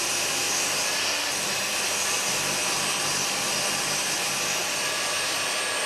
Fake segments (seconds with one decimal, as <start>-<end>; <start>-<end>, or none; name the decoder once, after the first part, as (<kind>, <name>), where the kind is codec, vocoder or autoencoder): none